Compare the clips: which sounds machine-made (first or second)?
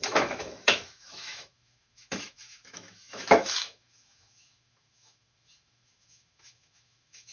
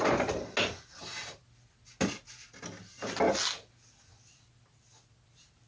first